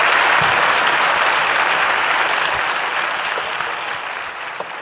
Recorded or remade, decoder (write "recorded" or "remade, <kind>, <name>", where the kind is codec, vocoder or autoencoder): remade, vocoder, BigVGAN v2